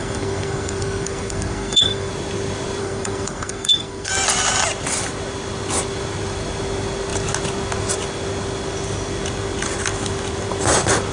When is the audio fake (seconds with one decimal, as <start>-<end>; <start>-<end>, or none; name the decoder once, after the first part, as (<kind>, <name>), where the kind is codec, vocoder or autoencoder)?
0.0-2.1 (codec, SNAC); 2.8-4.1